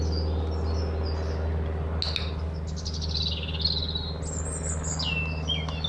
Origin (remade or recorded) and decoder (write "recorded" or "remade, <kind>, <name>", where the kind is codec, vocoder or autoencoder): recorded